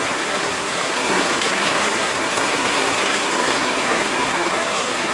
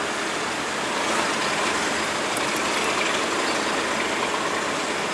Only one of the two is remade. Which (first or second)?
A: first